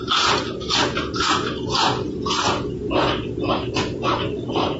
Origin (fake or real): fake